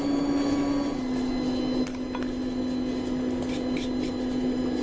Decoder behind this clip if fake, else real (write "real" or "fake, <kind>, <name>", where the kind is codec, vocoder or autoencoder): real